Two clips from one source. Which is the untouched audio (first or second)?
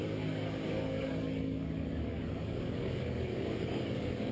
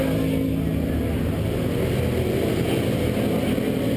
second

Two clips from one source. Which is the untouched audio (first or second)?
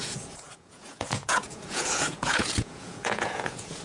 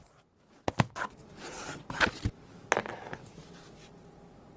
second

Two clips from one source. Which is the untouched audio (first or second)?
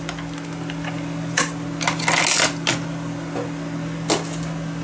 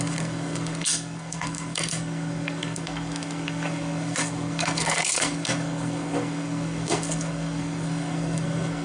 first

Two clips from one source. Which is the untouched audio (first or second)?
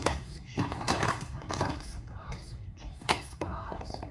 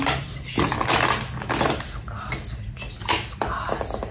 second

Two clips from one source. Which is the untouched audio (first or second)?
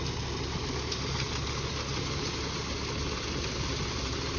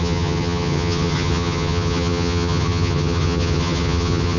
first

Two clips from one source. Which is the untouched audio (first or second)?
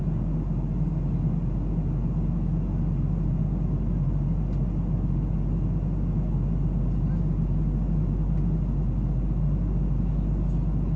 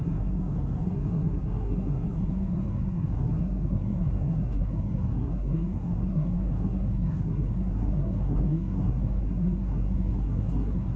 first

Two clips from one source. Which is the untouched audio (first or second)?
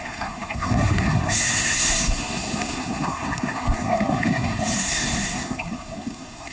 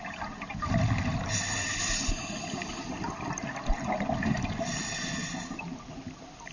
second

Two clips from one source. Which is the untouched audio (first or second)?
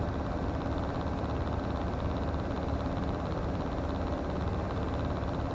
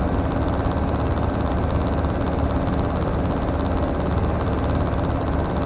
second